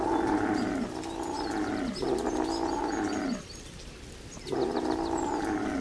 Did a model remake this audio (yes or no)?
no